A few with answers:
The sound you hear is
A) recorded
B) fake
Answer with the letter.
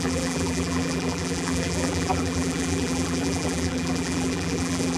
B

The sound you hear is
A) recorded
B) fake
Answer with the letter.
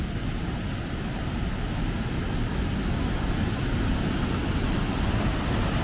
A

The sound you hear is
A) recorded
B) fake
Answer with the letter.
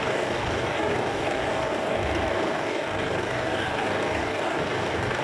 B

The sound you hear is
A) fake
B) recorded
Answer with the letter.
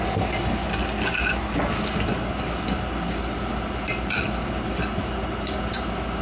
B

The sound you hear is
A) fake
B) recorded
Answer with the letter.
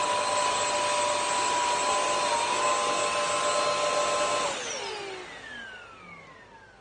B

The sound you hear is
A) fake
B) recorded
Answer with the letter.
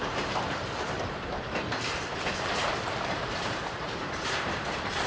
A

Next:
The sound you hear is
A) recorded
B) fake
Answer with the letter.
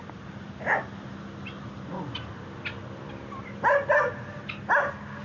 A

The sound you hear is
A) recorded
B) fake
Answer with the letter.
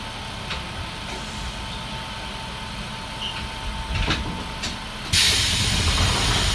A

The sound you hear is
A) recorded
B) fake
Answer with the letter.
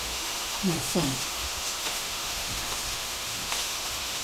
B